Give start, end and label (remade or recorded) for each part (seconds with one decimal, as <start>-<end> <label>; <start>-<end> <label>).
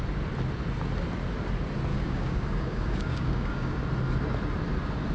0.0-1.9 recorded; 1.9-3.8 remade; 3.8-5.1 recorded